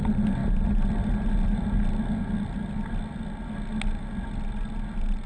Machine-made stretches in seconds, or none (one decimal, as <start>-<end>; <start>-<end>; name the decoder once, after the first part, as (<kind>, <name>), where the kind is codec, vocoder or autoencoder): none